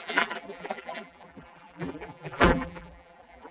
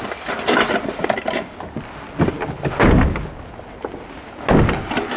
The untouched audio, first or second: second